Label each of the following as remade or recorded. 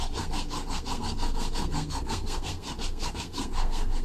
remade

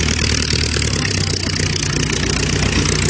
recorded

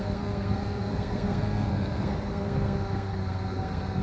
remade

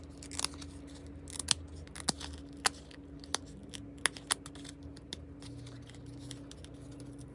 recorded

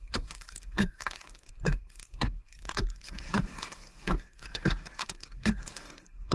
remade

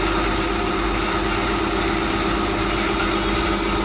recorded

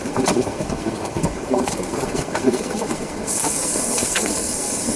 remade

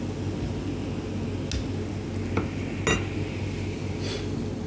recorded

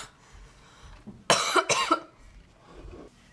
recorded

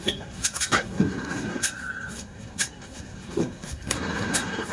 remade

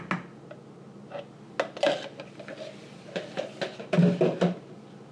recorded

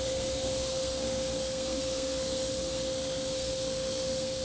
remade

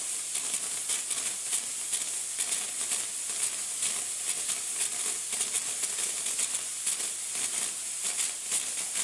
recorded